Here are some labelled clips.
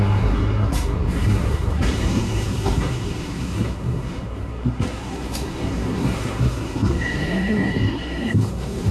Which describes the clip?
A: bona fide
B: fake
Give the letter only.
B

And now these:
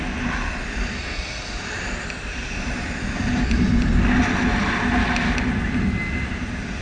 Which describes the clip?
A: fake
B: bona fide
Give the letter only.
B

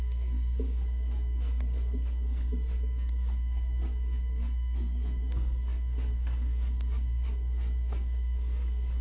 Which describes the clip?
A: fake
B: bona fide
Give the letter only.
A